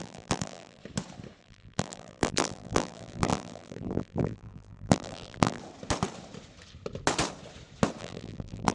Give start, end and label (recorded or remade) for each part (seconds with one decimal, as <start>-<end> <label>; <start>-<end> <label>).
0.0-0.8 remade; 0.8-1.4 recorded; 1.4-5.6 remade; 5.6-8.0 recorded; 8.0-8.7 remade